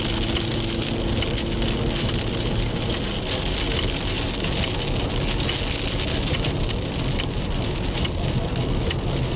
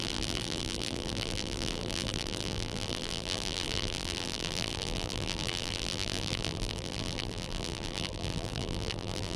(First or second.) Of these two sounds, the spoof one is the second